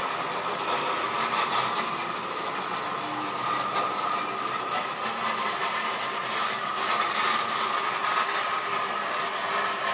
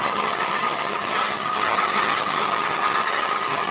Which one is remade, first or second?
second